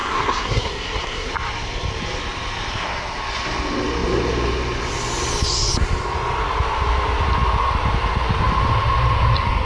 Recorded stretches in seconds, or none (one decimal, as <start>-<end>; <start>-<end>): 1.3-9.7